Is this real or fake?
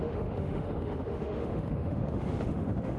fake